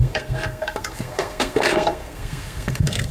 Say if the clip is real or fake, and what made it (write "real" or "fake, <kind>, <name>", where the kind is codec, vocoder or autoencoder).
fake, codec, SNAC